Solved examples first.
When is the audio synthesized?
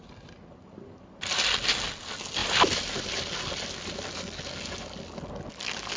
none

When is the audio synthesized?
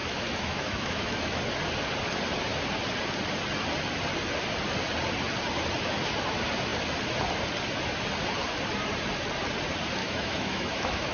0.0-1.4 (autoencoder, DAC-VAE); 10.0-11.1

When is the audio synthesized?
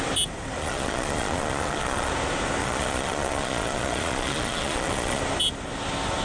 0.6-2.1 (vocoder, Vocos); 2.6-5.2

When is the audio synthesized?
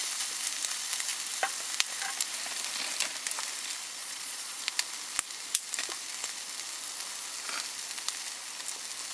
4.0-4.6 (vocoder, Vocos)